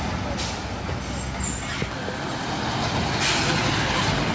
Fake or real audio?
real